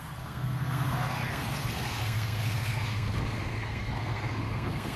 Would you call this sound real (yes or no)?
no